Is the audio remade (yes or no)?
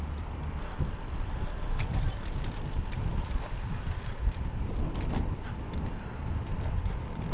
yes